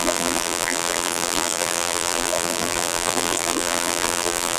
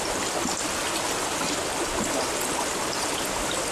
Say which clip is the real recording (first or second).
second